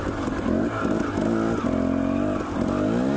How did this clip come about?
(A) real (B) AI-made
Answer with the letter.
A